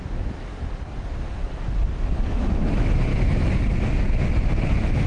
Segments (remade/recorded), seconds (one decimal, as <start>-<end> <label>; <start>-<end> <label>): 0.0-0.5 remade; 0.5-2.1 recorded; 2.1-3.1 remade; 3.1-5.1 recorded